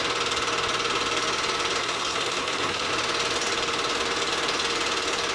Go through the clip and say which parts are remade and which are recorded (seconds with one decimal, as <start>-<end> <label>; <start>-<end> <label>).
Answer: 0.0-1.8 recorded; 1.8-2.9 remade; 2.9-5.3 recorded